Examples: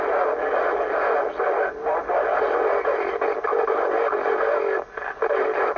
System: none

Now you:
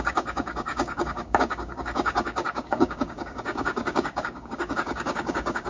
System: codec, DAC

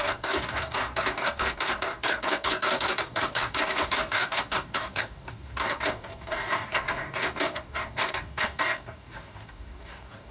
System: codec, DAC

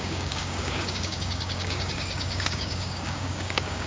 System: codec, DAC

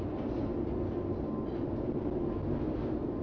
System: none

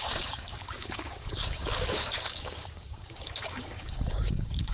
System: codec, DAC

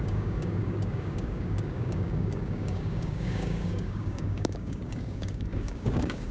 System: codec, DAC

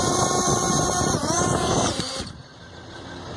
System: none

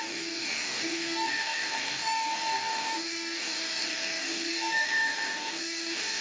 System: codec, DAC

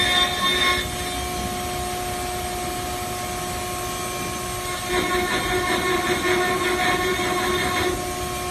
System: none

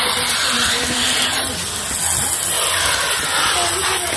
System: none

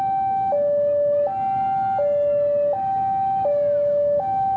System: none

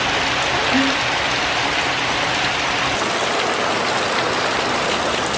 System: none